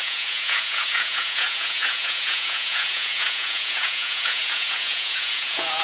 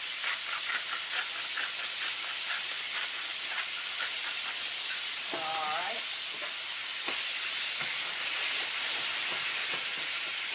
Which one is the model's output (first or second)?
first